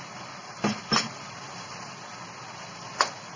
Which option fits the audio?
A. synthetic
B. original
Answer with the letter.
B